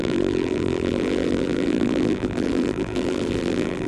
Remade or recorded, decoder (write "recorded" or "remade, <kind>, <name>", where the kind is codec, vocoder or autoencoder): remade, vocoder, BigVGAN v2